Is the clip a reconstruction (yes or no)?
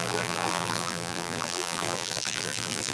yes